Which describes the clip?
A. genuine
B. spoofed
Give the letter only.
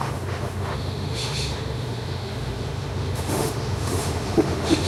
B